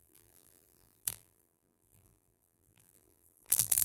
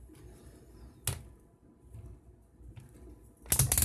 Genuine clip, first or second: second